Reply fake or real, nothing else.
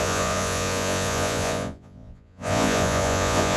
fake